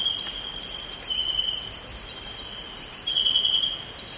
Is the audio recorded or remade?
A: recorded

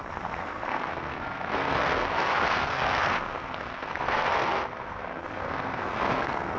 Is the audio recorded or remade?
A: remade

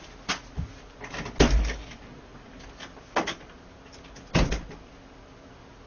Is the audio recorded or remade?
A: recorded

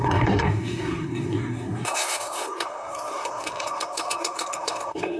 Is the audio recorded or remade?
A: remade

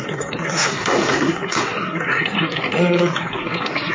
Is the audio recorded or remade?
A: remade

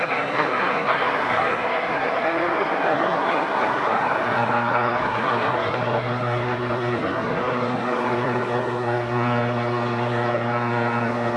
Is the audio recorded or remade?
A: remade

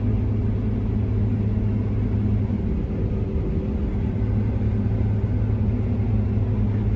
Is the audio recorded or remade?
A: recorded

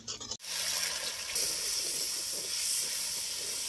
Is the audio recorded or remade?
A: recorded